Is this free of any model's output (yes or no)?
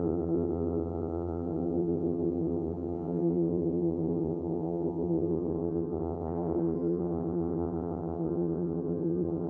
no